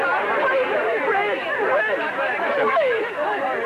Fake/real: real